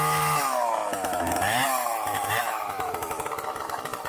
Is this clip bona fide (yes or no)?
no